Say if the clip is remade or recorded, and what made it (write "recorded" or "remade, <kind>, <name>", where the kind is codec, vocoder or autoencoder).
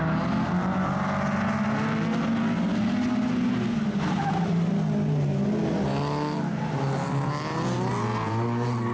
recorded